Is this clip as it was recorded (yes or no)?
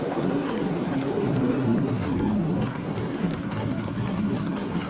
no